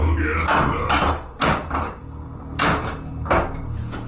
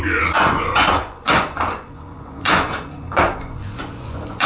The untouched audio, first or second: first